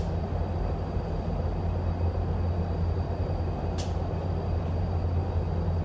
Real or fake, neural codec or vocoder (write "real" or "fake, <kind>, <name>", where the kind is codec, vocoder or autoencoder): real